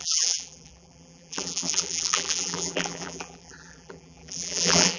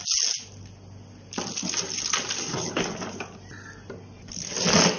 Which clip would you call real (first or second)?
second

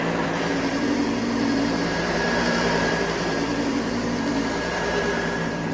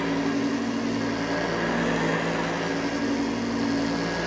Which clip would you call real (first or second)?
second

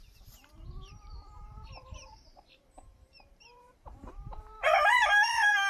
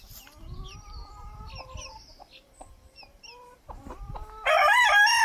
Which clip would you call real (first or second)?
second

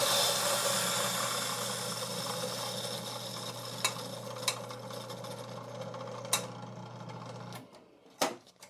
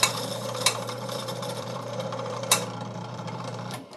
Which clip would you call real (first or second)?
first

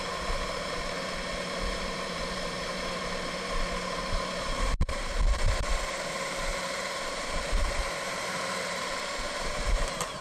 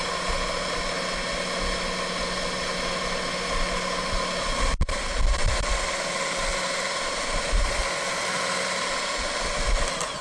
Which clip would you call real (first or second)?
second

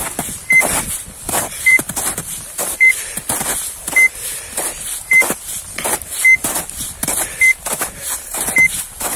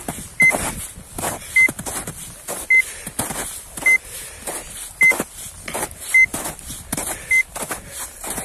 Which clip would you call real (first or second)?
second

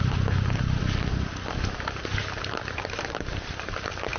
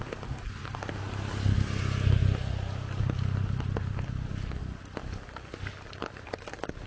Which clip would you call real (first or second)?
second